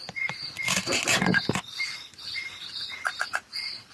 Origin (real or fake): real